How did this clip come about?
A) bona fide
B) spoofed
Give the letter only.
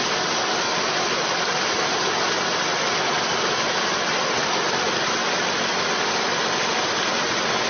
A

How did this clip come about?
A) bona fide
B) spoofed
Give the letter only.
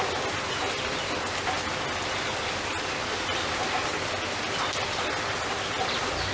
A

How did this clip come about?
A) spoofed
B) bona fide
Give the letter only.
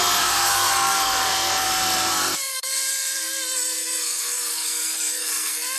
A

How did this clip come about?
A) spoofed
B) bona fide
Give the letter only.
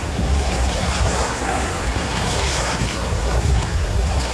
A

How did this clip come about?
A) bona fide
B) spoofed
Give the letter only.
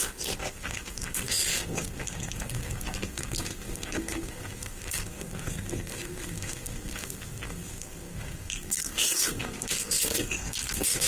B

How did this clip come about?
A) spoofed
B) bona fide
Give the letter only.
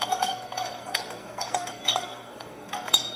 A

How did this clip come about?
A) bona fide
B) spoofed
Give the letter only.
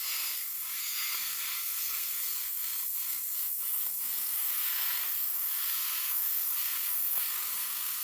B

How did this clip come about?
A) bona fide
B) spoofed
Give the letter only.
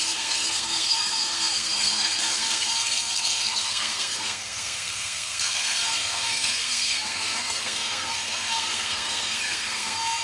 B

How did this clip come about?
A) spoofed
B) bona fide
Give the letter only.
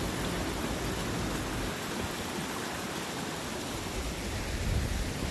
B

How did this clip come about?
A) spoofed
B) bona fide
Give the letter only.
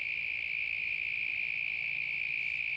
B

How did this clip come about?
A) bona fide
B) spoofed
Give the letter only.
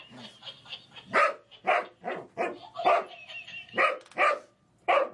A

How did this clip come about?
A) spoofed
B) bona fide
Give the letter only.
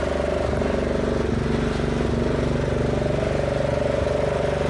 B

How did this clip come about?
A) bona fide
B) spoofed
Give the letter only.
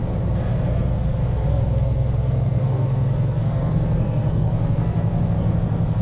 B